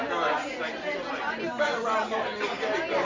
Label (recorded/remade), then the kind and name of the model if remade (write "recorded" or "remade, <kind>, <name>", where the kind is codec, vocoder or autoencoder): recorded